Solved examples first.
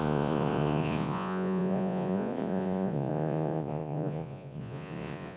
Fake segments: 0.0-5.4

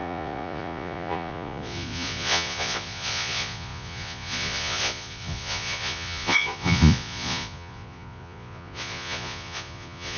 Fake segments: 0.0-10.2